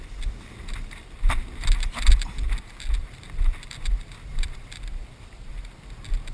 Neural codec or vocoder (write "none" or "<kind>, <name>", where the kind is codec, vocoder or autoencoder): vocoder, BigVGAN v2